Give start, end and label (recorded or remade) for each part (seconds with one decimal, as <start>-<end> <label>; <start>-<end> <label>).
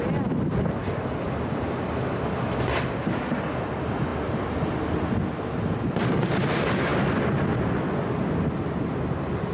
0.0-9.5 recorded